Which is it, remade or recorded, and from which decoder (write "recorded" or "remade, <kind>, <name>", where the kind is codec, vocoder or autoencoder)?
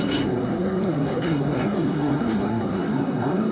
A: remade, codec, SNAC